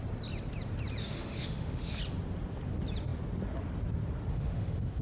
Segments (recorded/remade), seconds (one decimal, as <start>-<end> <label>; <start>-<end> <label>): 0.0-1.0 recorded; 1.0-2.0 remade; 2.0-4.3 recorded; 4.3-5.0 remade